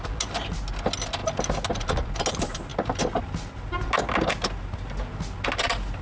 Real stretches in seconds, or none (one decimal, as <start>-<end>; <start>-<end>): 0.0-6.0